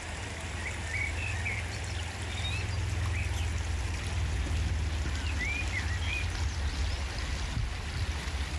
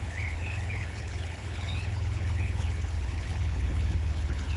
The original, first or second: first